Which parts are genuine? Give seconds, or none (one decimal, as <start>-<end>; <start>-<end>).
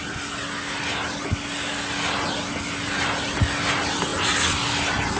0.0-5.2